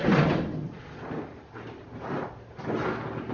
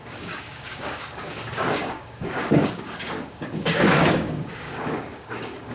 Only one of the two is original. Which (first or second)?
first